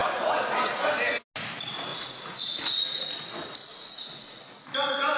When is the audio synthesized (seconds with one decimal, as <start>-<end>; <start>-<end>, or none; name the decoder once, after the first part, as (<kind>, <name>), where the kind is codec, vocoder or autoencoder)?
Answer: 0.0-0.9 (vocoder, Vocos); 1.9-3.1; 3.6-4.4